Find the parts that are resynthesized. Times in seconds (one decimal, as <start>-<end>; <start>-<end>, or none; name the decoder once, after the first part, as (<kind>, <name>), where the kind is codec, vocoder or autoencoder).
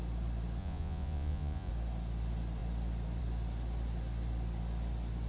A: 0.6-1.7 (vocoder, Vocos)